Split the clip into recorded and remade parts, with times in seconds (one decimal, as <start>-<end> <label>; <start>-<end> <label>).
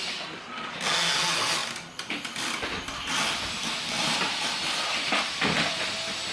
0.0-6.3 recorded